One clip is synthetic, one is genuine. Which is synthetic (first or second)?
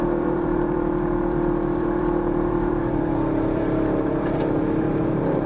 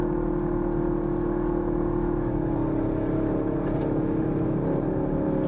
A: first